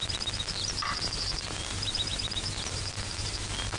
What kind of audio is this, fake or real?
fake